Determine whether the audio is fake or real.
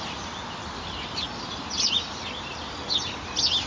real